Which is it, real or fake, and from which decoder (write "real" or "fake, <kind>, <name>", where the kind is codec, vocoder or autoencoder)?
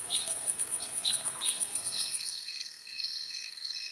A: fake, codec, SNAC